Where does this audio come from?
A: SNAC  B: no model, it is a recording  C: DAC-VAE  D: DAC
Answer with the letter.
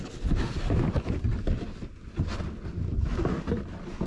B